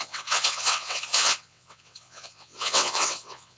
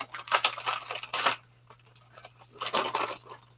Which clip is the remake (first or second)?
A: first